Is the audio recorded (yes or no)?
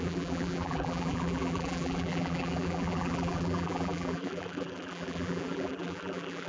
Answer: no